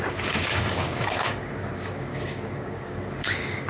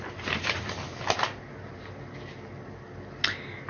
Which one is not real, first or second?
first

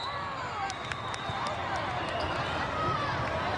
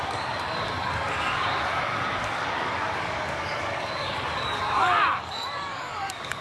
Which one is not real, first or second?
second